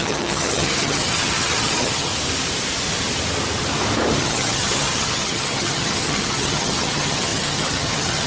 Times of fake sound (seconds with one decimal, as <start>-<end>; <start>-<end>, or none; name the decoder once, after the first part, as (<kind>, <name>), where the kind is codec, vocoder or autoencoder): 0.0-2.1 (vocoder, HiFi-GAN); 4.2-8.3